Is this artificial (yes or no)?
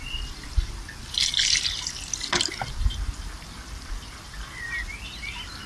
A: no